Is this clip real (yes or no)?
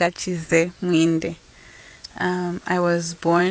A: no